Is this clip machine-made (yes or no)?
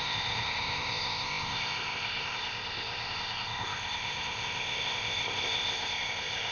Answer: yes